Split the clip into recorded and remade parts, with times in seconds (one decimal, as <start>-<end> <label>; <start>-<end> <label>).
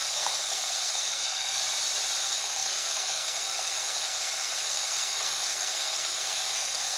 0.0-1.6 remade; 1.6-2.2 recorded; 2.2-7.0 remade